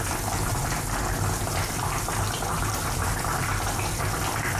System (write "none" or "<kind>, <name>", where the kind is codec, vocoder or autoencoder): none